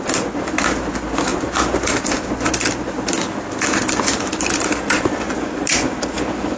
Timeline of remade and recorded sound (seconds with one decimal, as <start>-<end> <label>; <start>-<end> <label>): 0.0-6.6 recorded